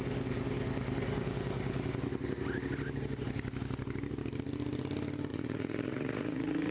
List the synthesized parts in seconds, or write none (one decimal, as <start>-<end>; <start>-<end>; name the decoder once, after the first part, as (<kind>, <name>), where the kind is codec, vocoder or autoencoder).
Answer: 5.3-6.7 (vocoder, Vocos)